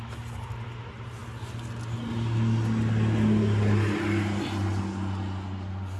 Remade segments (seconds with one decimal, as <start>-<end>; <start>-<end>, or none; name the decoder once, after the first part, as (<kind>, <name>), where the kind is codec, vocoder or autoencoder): none